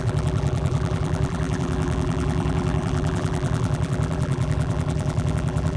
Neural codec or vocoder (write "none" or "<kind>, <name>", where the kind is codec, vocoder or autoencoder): vocoder, BigVGAN v2